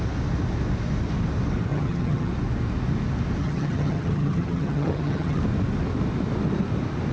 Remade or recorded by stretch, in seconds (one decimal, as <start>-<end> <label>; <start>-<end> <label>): 0.0-1.7 recorded; 1.7-2.3 remade; 2.3-3.4 recorded; 3.4-5.4 remade; 5.4-7.1 recorded